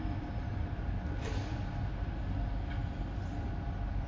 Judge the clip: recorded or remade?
recorded